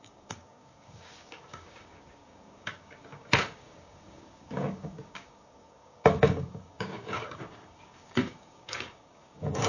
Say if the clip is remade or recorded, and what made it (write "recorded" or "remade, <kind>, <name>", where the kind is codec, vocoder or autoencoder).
remade, codec, DAC